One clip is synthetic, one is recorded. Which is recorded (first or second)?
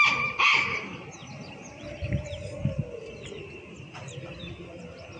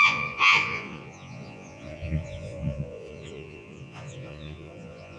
first